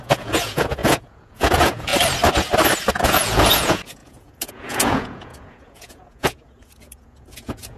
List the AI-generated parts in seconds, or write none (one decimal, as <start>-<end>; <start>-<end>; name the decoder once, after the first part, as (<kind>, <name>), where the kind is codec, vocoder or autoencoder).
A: 0.0-1.9 (vocoder, Vocos); 2.9-7.8